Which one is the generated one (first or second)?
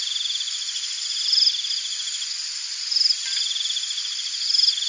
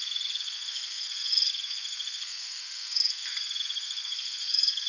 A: second